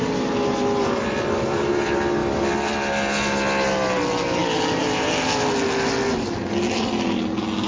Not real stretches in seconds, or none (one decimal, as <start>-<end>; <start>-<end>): none